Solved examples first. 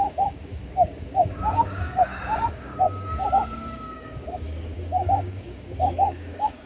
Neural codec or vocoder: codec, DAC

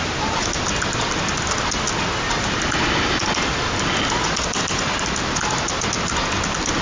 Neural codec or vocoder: none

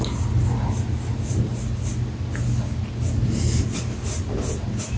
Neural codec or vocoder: none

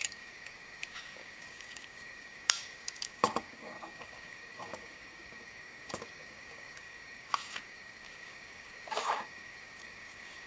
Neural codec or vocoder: codec, DAC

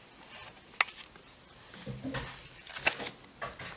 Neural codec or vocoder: none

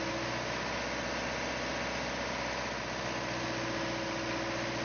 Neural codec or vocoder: none